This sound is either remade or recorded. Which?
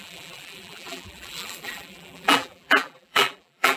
remade